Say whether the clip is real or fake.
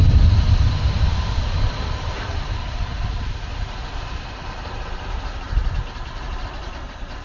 fake